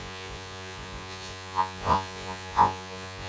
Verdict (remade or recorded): remade